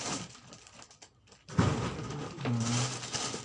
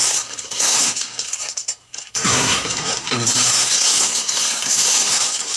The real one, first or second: first